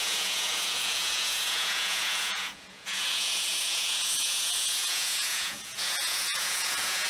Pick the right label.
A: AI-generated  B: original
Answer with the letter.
A